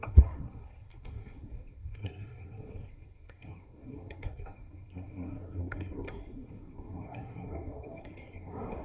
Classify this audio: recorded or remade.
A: remade